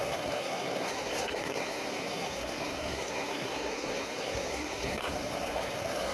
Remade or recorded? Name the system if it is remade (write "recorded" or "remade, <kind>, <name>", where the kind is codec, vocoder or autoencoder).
remade, codec, SNAC